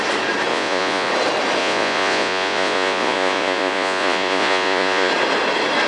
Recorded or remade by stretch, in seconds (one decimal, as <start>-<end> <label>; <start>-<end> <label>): 0.0-0.5 recorded; 0.5-1.1 remade; 1.1-1.6 recorded; 1.6-5.1 remade; 5.1-5.9 recorded

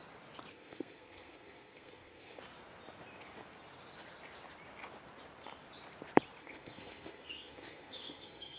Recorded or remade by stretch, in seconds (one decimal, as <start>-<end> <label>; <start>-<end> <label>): 0.0-0.5 recorded; 0.5-2.4 remade; 2.4-6.4 recorded; 6.4-8.6 remade

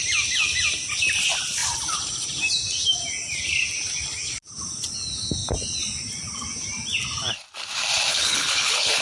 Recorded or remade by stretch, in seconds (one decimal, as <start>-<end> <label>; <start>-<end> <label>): 0.0-8.1 recorded; 8.1-9.0 remade

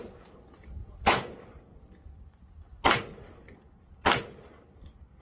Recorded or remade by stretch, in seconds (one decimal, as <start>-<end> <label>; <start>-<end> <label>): 0.0-0.8 recorded; 0.8-1.4 remade; 1.4-5.2 recorded

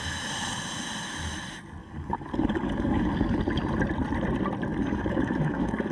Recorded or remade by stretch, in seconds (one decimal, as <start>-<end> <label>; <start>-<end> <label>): 0.0-1.8 recorded; 1.8-3.4 remade; 3.4-4.7 recorded; 4.7-5.9 remade

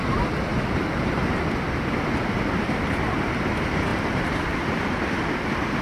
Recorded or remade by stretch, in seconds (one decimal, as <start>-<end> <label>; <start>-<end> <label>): 0.0-0.5 recorded; 0.5-3.2 remade; 3.2-3.9 recorded; 3.9-5.1 remade; 5.1-5.8 recorded

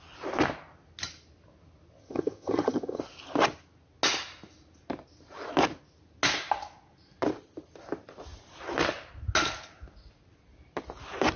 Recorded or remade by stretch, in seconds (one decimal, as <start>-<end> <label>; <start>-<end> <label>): 0.0-2.0 recorded; 2.0-3.0 remade; 3.0-11.4 recorded